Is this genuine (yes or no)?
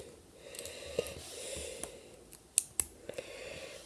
yes